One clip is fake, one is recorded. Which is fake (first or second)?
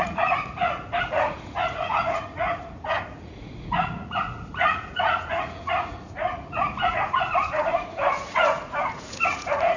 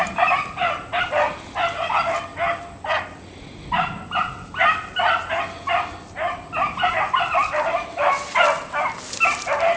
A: first